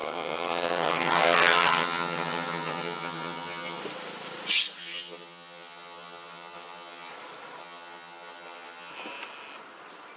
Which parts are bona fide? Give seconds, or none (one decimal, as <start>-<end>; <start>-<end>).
3.8-4.8; 7.1-7.6; 8.9-10.2